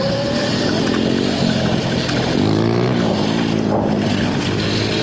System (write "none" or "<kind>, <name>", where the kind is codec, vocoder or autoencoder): none